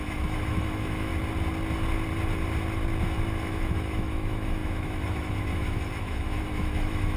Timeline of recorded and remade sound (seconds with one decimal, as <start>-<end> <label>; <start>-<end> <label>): 0.0-1.1 remade; 1.1-3.5 recorded; 3.5-7.2 remade